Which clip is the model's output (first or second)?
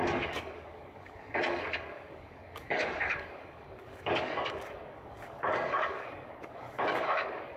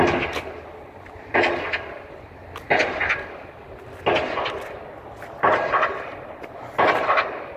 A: first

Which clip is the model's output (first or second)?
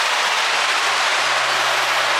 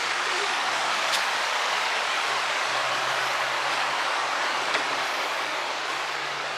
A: second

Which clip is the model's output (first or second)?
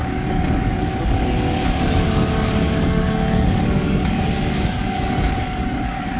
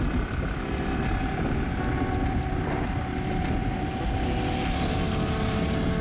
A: first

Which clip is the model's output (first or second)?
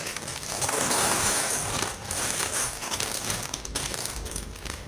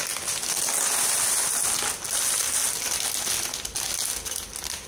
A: first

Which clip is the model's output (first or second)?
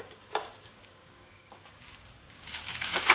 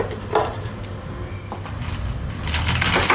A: first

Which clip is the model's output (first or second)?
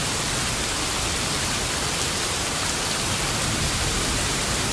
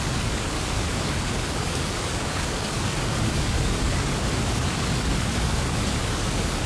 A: second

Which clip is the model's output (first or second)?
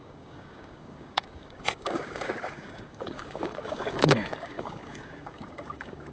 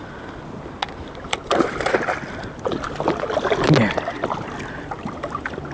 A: first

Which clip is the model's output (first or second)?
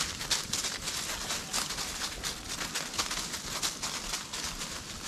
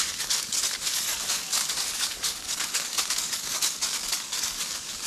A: second